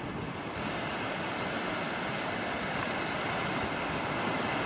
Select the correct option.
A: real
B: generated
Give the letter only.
A